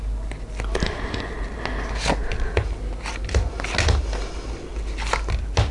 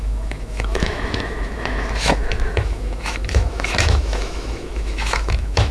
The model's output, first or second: second